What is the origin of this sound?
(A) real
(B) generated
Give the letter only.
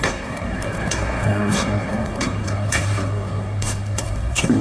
B